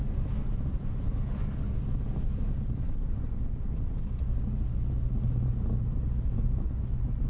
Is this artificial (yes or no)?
no